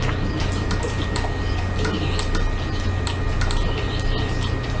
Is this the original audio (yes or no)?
yes